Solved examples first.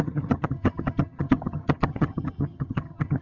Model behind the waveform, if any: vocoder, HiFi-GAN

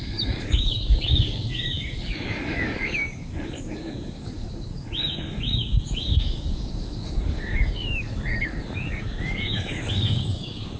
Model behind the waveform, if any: codec, DAC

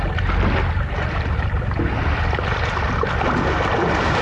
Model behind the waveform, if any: none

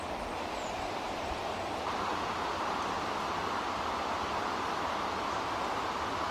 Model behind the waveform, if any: none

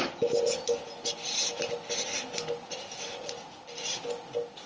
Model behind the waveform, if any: none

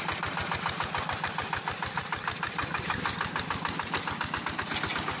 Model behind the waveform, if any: none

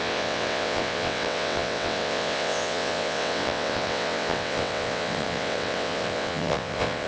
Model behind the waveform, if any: vocoder, WaveNeXt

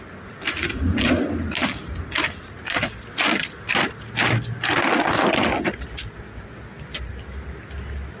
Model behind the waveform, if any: none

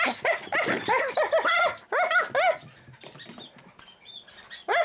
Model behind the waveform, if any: none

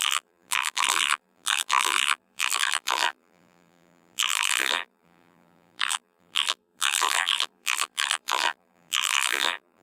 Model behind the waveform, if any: vocoder, BigVGAN v2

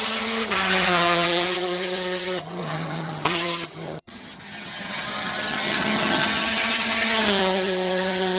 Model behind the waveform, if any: vocoder, HiFi-GAN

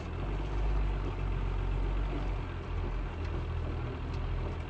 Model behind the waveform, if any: none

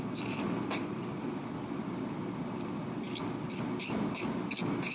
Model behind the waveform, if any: none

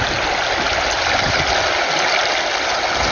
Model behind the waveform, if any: none